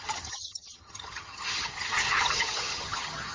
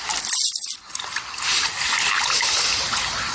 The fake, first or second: first